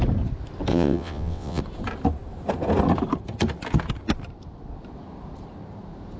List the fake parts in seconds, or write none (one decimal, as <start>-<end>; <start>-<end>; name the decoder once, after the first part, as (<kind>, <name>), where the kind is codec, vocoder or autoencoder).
0.7-1.6 (vocoder, WaveNeXt)